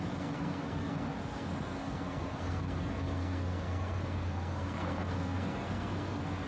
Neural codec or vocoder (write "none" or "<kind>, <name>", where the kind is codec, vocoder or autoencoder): codec, SNAC